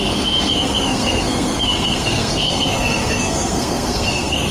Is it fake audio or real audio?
fake